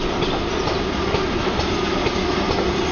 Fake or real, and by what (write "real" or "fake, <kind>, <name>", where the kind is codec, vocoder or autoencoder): real